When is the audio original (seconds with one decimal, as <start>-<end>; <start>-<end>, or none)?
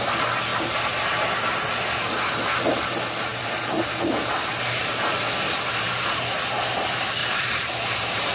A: 0.0-7.2